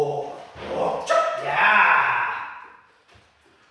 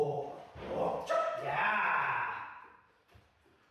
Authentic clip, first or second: first